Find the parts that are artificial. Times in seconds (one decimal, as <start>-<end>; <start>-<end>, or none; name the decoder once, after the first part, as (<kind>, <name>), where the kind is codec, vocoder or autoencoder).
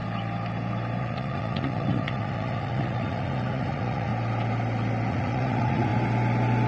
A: 1.0-4.1 (vocoder, Vocos); 5.1-5.9